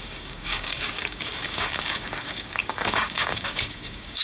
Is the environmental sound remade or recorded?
remade